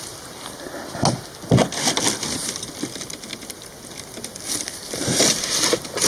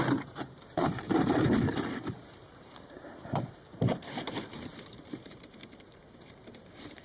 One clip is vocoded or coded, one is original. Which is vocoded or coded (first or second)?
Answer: second